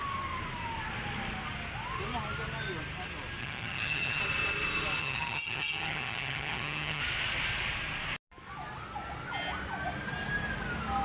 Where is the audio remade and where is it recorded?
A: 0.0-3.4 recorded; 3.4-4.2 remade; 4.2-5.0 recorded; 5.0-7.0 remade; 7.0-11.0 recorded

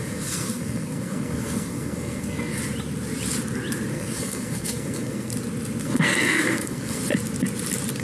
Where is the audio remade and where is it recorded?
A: 0.0-2.6 remade; 2.6-3.9 recorded; 3.9-5.3 remade; 5.3-5.8 recorded; 5.8-7.0 remade; 7.0-8.0 recorded

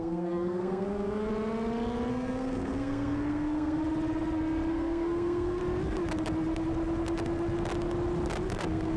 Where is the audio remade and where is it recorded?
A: 0.0-1.3 remade; 1.3-2.1 recorded; 2.1-3.8 remade; 3.8-4.7 recorded; 4.7-5.6 remade; 5.6-8.6 recorded; 8.6-9.0 remade

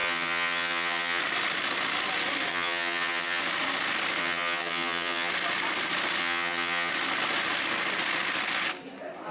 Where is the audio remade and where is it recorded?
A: 0.0-1.2 remade; 1.2-2.5 recorded; 2.5-3.4 remade; 3.4-4.2 recorded; 4.2-5.3 remade; 5.3-6.2 recorded; 6.2-6.9 remade; 6.9-9.3 recorded

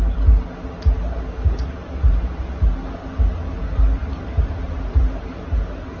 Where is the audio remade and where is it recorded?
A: 0.0-1.8 recorded; 1.8-2.6 remade; 2.6-4.0 recorded; 4.0-5.4 remade; 5.4-6.0 recorded

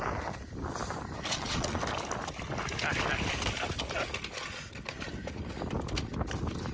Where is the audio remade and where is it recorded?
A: 0.0-1.3 recorded; 1.3-1.8 remade; 1.8-6.7 recorded